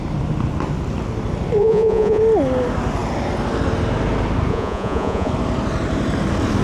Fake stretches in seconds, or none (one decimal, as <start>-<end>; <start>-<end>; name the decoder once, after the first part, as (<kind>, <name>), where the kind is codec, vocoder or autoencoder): 1.6-2.2 (vocoder, Vocos); 4.5-5.3